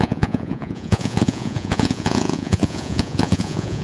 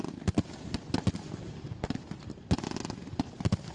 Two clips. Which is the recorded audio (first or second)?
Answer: second